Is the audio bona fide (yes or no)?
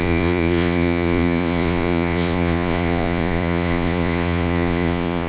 no